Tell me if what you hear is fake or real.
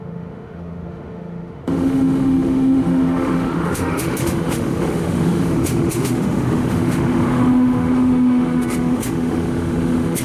fake